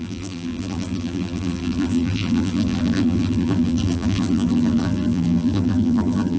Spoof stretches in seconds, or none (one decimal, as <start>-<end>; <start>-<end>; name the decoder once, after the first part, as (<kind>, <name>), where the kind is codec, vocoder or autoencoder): 0.0-6.4 (vocoder, BigVGAN v2)